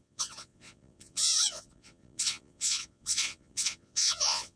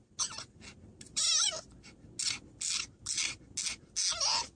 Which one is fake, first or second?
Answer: first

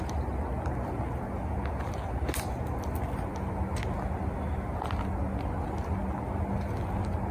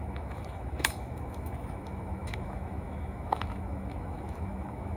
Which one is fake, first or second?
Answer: second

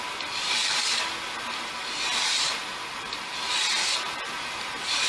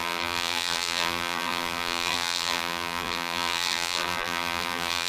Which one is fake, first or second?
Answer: second